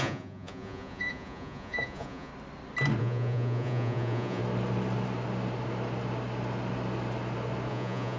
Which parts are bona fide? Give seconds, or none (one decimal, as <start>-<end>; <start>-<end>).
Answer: 2.3-3.0; 4.4-7.7